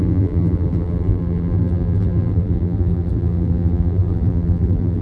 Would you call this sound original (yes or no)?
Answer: no